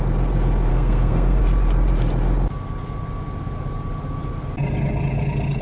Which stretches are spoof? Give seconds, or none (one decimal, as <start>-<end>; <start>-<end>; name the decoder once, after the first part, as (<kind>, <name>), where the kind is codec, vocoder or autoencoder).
0.7-1.4 (codec, SNAC)